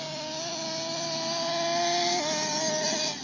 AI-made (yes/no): no